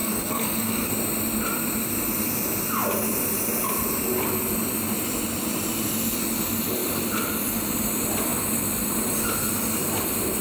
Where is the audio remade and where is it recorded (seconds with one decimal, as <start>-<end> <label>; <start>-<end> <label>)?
0.0-0.9 remade; 0.9-10.4 recorded